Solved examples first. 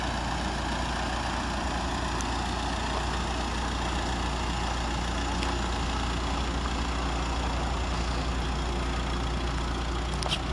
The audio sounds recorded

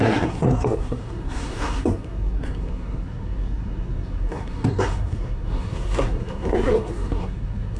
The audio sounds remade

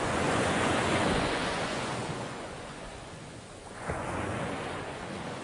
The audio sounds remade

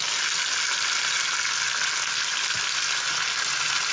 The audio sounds recorded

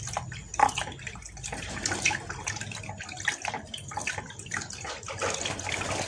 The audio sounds recorded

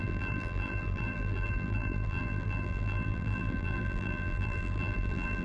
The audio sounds remade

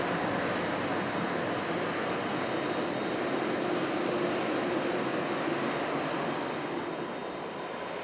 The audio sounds recorded